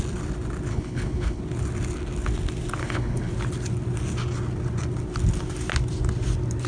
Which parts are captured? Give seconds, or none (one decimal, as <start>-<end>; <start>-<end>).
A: 0.0-0.7; 1.4-2.8; 3.3-6.7